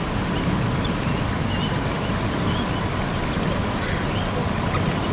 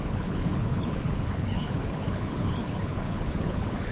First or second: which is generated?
second